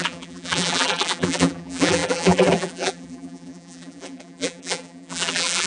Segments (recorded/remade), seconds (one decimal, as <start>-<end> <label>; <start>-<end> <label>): 0.0-5.7 remade

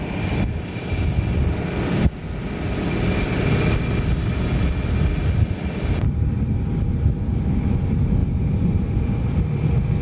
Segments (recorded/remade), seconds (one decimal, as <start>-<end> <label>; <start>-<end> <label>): 0.0-8.2 recorded; 8.2-8.9 remade; 8.9-10.0 recorded

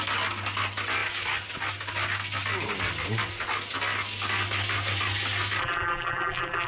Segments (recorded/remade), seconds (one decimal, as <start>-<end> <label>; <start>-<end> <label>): 0.0-5.6 recorded; 5.6-6.7 remade

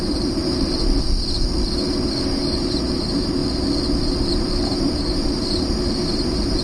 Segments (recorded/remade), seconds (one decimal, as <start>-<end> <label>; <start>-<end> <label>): 0.0-0.4 remade; 0.4-2.4 recorded; 2.4-3.4 remade; 3.4-4.3 recorded; 4.3-6.6 remade

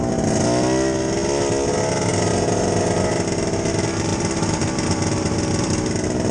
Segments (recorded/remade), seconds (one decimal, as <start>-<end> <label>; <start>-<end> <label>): 0.0-4.1 recorded; 4.1-6.3 remade

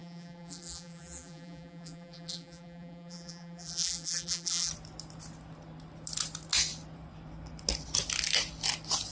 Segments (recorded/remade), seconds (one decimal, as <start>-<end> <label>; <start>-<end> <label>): 0.0-4.7 remade; 4.7-9.1 recorded

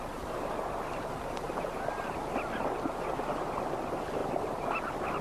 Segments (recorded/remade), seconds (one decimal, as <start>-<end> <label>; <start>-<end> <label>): 0.0-5.2 recorded

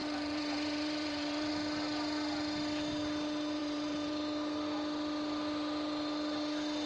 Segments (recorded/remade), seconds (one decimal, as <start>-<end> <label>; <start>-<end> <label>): 0.0-1.5 remade; 1.5-3.6 recorded; 3.6-4.1 remade; 4.1-6.9 recorded